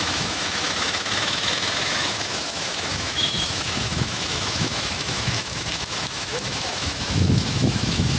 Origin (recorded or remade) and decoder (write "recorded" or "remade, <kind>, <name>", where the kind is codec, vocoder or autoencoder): remade, autoencoder, DAC-VAE